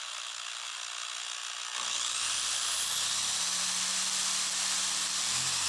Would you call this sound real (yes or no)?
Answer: yes